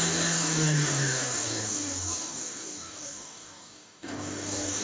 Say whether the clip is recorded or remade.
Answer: remade